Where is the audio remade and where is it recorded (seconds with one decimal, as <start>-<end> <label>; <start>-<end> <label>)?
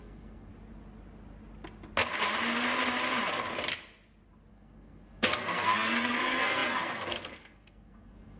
0.0-0.5 remade; 0.5-4.5 recorded; 4.5-8.4 remade